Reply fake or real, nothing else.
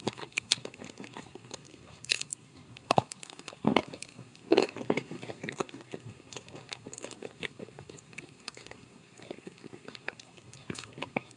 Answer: fake